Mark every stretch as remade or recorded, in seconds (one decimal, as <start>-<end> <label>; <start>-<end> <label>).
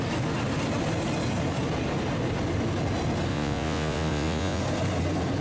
0.0-3.3 recorded; 3.3-4.6 remade; 4.6-5.4 recorded